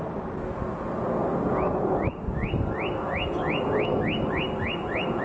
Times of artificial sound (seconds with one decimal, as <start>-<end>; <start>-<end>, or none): none